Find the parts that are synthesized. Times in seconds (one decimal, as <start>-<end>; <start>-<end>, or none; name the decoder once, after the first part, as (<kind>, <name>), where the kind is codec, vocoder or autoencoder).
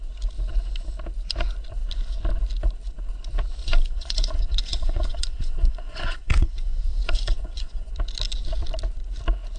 3.6-7.9 (vocoder, Vocos)